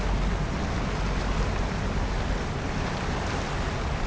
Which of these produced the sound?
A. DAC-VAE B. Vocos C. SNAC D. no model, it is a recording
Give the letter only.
D